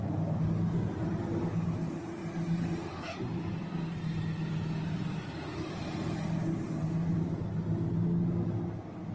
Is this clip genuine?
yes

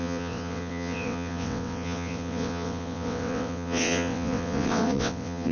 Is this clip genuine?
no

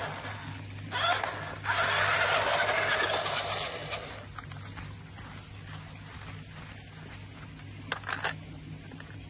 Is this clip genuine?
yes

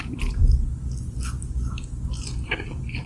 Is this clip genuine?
yes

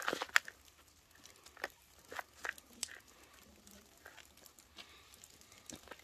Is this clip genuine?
yes